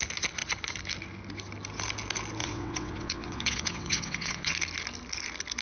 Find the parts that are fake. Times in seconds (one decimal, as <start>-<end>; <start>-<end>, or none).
2.4-4.5